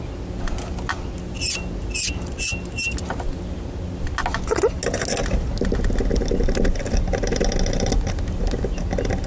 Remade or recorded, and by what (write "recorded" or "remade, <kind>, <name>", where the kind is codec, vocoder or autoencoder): recorded